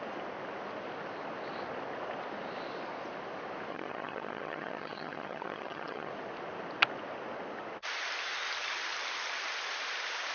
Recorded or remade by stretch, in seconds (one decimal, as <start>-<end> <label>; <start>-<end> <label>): 0.0-3.7 recorded; 3.7-6.1 remade; 6.1-10.3 recorded